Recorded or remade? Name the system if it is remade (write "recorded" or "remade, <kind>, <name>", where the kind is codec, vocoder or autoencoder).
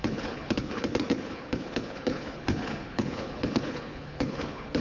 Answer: remade, codec, HILCodec